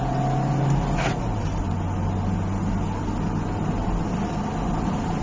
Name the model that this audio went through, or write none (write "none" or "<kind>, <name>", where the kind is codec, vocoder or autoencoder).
none